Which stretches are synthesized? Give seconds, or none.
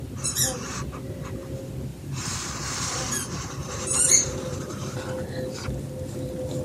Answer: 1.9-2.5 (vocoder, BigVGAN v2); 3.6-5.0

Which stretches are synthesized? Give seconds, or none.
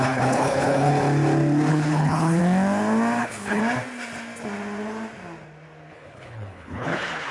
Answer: 0.0-0.9 (codec, HILCodec); 1.7-2.4; 3.2-3.6; 5.9-7.3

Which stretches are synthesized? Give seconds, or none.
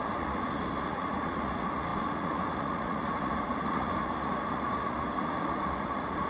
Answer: 0.0-6.3 (vocoder, Vocos)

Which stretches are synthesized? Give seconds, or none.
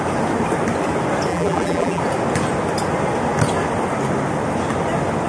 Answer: 1.3-2.0 (vocoder, BigVGAN v2)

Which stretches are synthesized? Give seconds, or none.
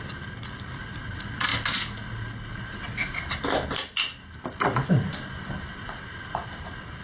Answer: none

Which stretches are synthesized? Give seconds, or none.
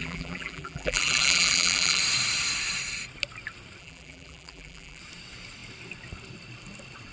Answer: 0.0-2.0 (vocoder, BigVGAN v2); 3.8-5.0